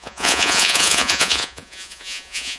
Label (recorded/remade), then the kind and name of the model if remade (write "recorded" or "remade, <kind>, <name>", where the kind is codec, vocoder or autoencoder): remade, vocoder, Vocos